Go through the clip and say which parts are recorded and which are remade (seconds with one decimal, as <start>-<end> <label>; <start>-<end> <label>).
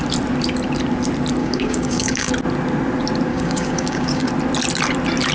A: 0.0-1.4 recorded; 1.4-2.3 remade; 2.3-3.3 recorded; 3.3-4.3 remade; 4.3-5.3 recorded